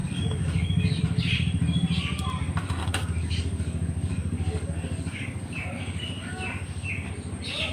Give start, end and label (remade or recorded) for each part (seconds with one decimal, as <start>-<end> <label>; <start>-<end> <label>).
0.0-1.0 remade; 1.0-2.8 recorded; 2.8-7.1 remade; 7.1-7.7 recorded